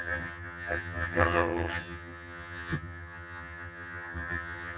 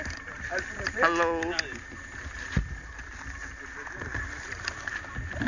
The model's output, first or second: first